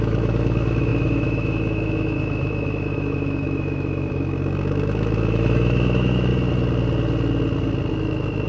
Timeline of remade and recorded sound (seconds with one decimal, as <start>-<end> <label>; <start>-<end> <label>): 0.0-6.3 remade; 6.3-7.9 recorded; 7.9-8.5 remade